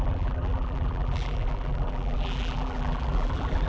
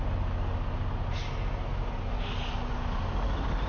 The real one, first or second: second